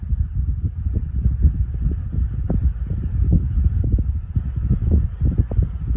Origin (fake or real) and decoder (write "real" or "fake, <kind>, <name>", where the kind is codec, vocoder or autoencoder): real